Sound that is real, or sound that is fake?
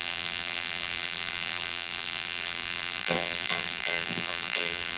fake